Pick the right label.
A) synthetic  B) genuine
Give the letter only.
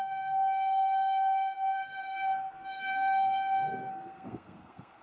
A